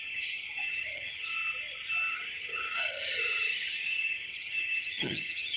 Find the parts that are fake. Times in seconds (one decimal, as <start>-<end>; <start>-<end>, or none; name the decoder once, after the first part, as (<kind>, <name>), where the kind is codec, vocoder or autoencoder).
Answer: 0.0-1.3 (vocoder, HiFi-GAN); 2.1-5.6